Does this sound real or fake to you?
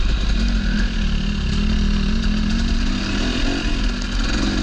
real